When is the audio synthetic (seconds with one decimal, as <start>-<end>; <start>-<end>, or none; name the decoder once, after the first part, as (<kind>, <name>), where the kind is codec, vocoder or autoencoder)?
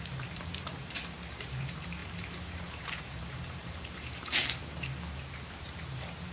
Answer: 0.0-4.6 (vocoder, BigVGAN v2); 5.8-6.3